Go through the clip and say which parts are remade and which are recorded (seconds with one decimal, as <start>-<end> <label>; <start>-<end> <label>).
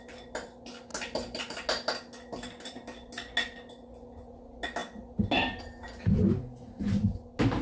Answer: 0.0-7.6 recorded